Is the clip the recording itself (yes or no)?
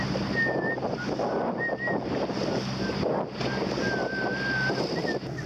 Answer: yes